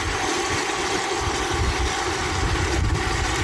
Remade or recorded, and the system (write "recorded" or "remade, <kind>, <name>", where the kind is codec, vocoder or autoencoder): recorded